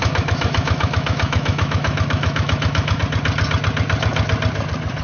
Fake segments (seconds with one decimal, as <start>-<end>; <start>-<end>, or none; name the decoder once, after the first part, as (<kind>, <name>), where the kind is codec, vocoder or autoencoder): 0.0-3.0 (autoencoder, DAC-VAE)